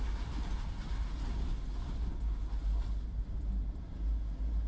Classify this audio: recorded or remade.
recorded